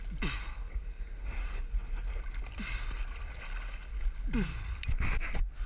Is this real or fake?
real